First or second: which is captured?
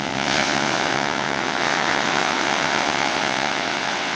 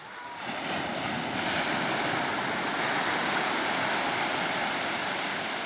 second